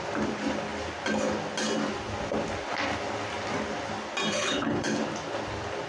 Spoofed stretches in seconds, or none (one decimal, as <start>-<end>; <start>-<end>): 4.3-5.0